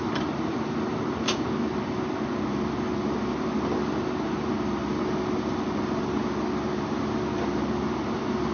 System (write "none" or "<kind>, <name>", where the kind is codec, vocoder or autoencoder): none